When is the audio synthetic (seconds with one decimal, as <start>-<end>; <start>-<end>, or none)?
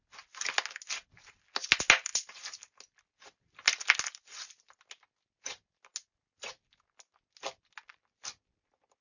none